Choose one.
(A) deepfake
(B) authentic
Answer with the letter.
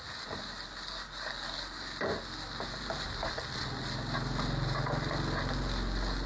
B